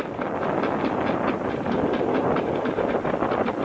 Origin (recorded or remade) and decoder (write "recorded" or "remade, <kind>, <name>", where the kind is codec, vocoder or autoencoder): recorded